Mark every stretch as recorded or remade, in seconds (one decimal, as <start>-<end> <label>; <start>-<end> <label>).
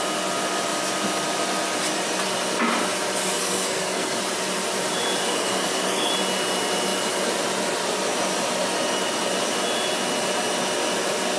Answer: 0.0-3.4 recorded; 3.4-4.2 remade; 4.2-5.2 recorded; 5.2-6.1 remade; 6.1-11.4 recorded